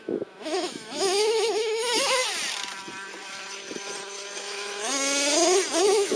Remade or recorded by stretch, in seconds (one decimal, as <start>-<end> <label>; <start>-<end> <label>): 0.0-2.2 remade; 2.2-4.4 recorded; 4.4-4.9 remade; 4.9-5.8 recorded; 5.8-6.2 remade